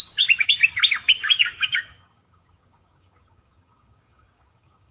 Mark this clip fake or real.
fake